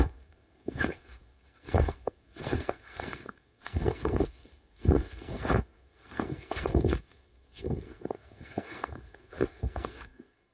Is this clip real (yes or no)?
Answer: no